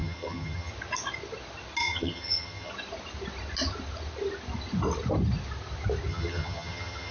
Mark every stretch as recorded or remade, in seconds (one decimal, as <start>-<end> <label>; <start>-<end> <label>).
0.0-0.7 remade; 0.7-1.8 recorded; 1.8-2.7 remade; 2.7-6.1 recorded; 6.1-7.1 remade

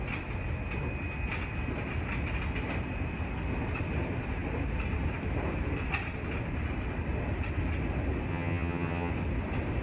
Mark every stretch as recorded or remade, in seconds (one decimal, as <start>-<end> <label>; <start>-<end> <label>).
0.0-8.3 recorded; 8.3-9.1 remade; 9.1-9.8 recorded

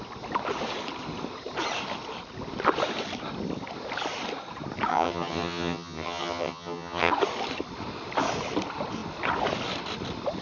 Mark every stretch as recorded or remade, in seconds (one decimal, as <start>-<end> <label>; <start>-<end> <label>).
0.0-4.9 recorded; 4.9-7.1 remade; 7.1-10.4 recorded

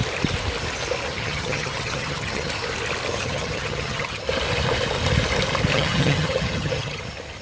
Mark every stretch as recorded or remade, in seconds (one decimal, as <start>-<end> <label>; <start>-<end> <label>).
0.0-1.1 recorded; 1.1-2.5 remade; 2.5-3.1 recorded; 3.1-4.2 remade; 4.2-5.7 recorded; 5.7-7.0 remade; 7.0-7.4 recorded

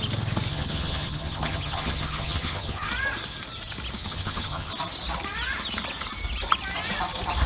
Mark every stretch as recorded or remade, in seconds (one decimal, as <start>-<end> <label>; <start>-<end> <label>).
0.0-0.5 recorded; 0.5-2.9 remade; 2.9-4.0 recorded; 4.0-4.7 remade; 4.7-7.5 recorded

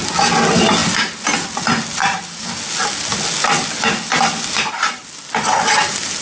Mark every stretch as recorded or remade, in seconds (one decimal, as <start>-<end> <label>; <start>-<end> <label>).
0.0-6.2 recorded

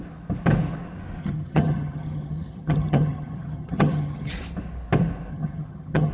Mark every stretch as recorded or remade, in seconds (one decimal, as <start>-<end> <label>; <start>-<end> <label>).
0.0-1.2 recorded; 1.2-4.3 remade; 4.3-5.3 recorded; 5.3-6.1 remade